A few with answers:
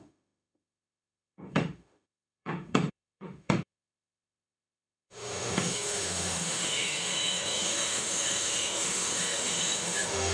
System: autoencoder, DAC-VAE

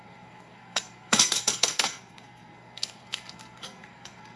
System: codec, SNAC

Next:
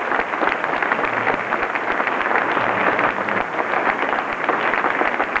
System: none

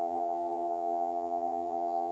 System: vocoder, HiFi-GAN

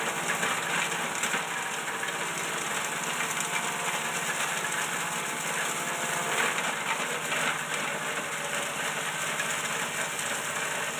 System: none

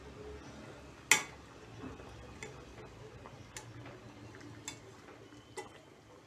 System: none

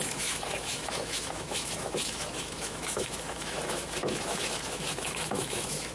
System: autoencoder, DAC-VAE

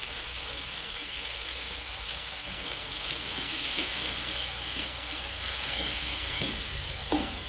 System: codec, SNAC